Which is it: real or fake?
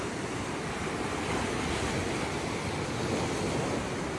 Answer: real